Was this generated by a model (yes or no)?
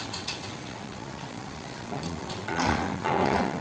yes